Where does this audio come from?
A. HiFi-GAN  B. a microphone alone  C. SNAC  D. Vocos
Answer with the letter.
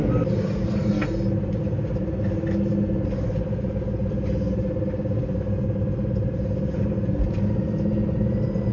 B